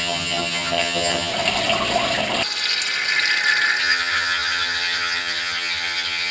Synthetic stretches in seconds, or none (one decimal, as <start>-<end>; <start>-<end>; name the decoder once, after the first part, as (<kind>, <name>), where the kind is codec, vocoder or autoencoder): 0.0-1.3 (vocoder, HiFi-GAN); 3.8-6.3

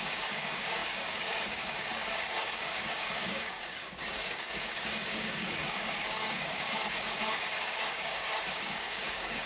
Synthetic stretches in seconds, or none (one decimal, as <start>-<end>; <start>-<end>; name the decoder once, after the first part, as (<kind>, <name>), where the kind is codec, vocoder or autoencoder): 0.0-9.5 (codec, DAC)

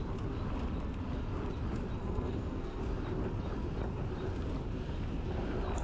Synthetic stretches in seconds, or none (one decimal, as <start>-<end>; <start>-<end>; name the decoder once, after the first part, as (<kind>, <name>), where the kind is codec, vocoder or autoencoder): 2.0-2.8 (codec, SNAC)

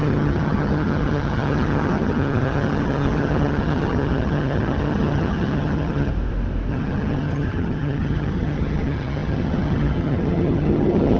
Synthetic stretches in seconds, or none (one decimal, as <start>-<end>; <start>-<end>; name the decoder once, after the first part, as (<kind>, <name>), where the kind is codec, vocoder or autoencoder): 0.0-6.1 (vocoder, HiFi-GAN); 6.7-11.2

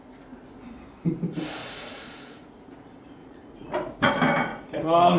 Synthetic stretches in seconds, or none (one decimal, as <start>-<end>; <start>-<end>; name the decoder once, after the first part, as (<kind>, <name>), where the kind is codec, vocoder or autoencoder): 1.6-2.6 (vocoder, Vocos); 3.2-4.1; 4.5-5.2

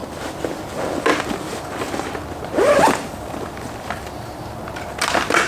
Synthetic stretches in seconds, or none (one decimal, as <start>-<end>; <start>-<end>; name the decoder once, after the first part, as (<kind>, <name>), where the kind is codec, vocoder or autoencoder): none

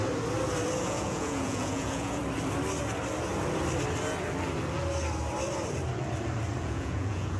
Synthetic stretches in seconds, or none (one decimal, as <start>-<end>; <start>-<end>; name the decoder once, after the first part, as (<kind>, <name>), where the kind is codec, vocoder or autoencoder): 0.8-2.2 (vocoder, Vocos); 6.6-7.4